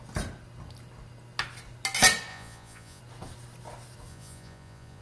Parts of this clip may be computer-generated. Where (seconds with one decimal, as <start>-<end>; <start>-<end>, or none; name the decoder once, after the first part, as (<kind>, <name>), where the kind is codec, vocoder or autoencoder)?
2.3-3.0 (vocoder, Vocos); 4.1-5.0